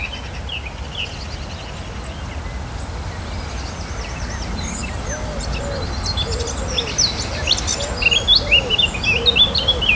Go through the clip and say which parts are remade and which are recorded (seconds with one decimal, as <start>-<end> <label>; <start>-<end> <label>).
0.0-9.9 recorded